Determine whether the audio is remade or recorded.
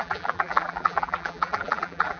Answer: remade